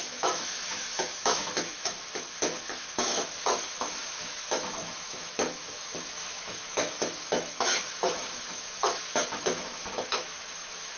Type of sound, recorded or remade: remade